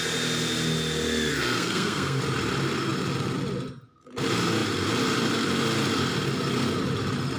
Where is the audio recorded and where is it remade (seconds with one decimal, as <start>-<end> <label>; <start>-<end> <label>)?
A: 0.0-1.3 recorded; 1.3-2.2 remade; 2.2-7.4 recorded